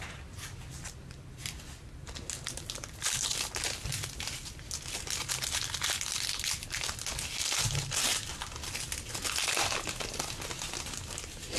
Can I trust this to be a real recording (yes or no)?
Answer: yes